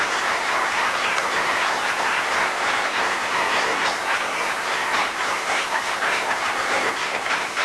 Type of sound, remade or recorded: remade